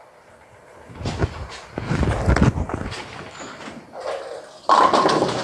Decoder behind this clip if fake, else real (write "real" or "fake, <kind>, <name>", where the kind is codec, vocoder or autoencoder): real